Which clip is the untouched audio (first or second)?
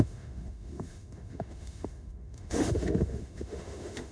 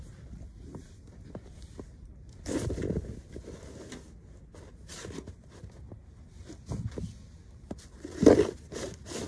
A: second